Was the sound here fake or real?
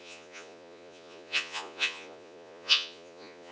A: fake